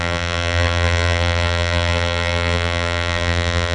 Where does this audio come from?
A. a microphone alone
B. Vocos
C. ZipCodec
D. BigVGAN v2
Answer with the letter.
D